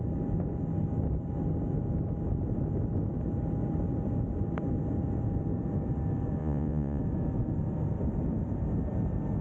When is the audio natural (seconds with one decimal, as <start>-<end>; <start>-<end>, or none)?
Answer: 0.0-6.4; 7.0-9.4